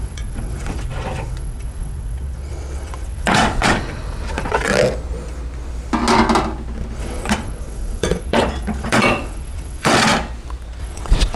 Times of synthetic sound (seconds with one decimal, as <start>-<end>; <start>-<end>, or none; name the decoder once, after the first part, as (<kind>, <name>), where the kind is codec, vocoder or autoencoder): 0.0-4.7 (vocoder, WaveNeXt); 7.0-10.1; 10.8-11.4